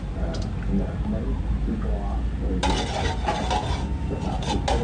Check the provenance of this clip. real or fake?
real